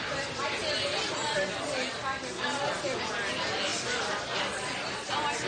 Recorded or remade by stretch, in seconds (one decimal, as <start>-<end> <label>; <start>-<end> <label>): 0.0-5.5 recorded